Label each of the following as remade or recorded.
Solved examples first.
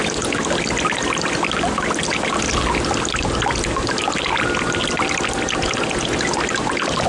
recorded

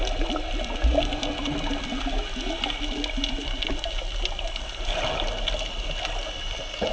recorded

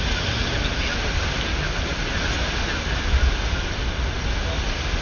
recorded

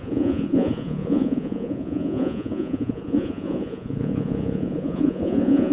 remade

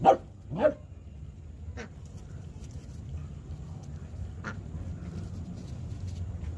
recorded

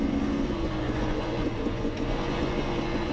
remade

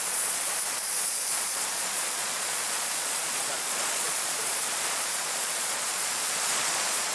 remade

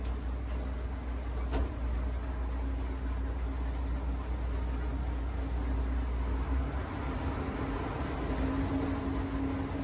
recorded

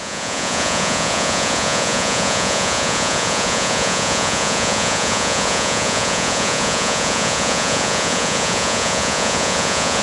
remade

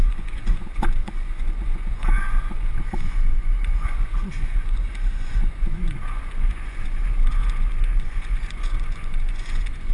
remade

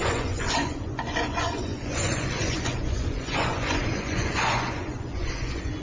remade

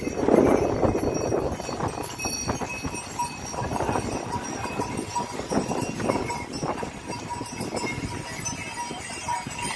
recorded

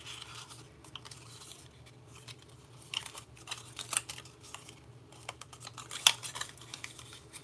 recorded